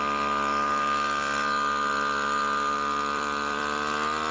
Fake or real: fake